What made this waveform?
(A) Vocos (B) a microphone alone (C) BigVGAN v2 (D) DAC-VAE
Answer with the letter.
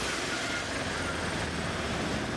B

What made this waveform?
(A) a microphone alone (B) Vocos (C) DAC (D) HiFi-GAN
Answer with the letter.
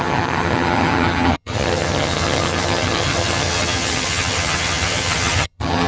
D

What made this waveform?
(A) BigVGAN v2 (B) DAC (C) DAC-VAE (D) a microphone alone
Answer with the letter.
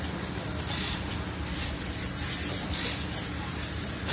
D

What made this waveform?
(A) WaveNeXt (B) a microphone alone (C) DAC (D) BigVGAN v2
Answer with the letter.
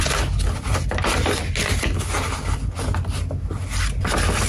B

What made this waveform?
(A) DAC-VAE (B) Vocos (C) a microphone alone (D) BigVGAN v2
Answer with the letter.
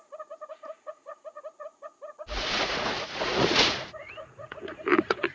B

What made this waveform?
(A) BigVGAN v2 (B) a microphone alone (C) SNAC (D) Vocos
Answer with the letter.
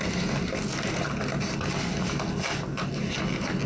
B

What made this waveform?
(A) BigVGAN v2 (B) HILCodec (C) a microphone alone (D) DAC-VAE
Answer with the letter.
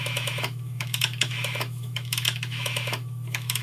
D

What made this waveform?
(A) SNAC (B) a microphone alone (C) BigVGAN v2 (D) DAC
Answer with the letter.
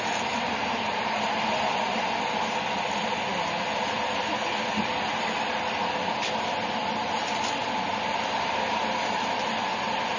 B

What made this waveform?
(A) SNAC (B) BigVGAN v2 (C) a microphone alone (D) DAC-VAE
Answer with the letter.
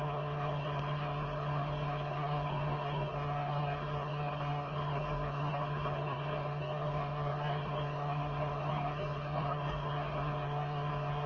A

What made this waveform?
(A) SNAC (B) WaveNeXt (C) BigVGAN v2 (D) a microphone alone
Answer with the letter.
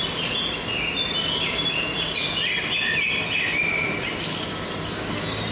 D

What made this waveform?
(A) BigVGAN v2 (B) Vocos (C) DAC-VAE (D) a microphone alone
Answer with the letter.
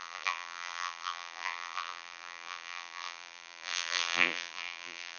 A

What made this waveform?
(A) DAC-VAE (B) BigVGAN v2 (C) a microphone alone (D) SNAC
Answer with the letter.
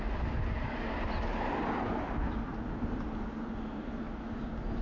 C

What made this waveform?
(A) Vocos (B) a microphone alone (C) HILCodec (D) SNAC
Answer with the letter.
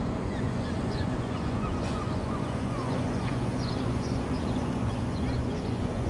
A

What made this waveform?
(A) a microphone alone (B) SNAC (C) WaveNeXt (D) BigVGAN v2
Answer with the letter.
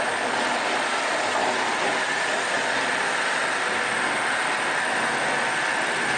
A